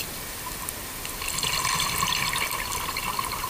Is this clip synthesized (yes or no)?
no